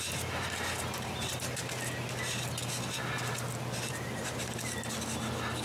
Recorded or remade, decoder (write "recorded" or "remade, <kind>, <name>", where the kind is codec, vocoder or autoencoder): recorded